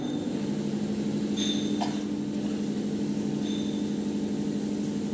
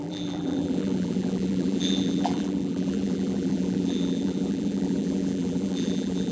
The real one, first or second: first